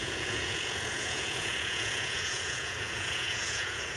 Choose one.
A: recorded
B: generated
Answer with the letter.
B